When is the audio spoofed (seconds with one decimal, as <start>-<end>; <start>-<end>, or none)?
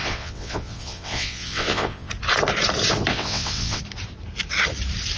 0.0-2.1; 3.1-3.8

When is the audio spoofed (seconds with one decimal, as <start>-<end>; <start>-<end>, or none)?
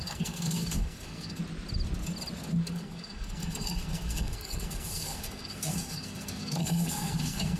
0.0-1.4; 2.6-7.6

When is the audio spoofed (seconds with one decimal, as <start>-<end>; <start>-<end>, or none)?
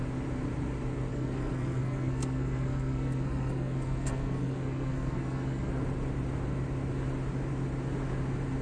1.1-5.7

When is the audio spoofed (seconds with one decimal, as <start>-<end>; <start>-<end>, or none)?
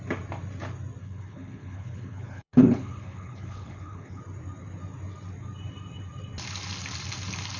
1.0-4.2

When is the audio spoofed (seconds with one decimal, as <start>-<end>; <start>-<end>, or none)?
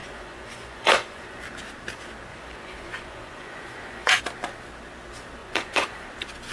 0.0-1.4; 2.3-4.2; 5.4-6.1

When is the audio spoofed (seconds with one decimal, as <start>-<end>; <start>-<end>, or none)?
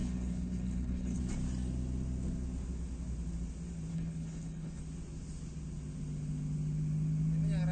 0.0-1.2; 3.9-4.8